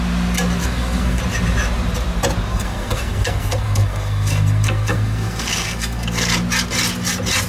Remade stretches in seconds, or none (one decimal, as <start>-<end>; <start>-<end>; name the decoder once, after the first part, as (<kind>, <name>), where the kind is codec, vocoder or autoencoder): 0.6-1.2 (codec, SNAC); 2.5-6.3

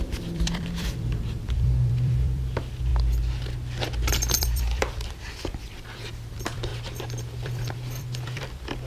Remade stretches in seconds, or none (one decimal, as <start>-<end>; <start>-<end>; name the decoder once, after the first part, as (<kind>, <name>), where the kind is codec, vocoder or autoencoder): 0.0-2.9 (vocoder, BigVGAN v2); 4.4-6.7; 7.3-8.9

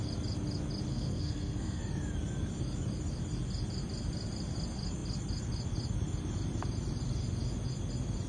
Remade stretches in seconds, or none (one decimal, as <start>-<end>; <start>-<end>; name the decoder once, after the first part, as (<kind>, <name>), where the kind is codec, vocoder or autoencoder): 0.9-1.8 (codec, SNAC)

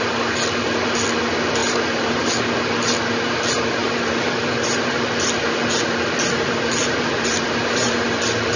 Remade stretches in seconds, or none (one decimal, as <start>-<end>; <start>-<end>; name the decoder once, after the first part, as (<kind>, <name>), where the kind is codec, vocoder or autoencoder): 1.6-2.3 (vocoder, BigVGAN v2); 3.8-5.6; 6.8-8.0

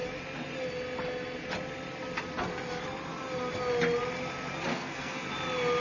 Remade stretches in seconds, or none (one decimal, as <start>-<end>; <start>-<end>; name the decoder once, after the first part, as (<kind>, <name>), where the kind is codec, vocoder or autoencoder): 4.7-5.3 (codec, SNAC)